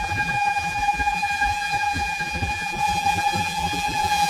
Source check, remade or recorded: remade